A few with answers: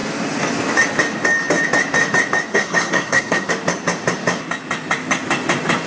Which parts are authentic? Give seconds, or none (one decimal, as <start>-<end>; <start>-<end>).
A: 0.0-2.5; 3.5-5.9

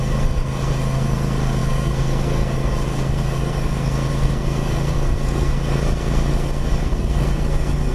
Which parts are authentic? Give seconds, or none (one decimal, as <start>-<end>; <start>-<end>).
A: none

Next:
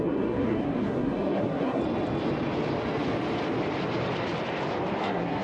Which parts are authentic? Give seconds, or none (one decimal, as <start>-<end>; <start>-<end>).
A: 1.8-5.0